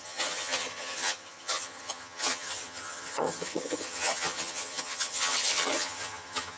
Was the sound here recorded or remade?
remade